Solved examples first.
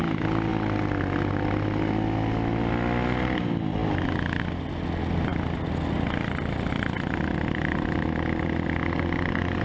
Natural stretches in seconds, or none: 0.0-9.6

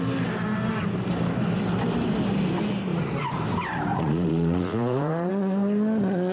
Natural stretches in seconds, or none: 0.0-2.9; 3.4-3.9; 5.3-6.3

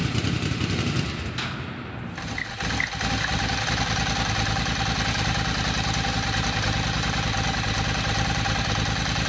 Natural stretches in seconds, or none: 0.0-9.3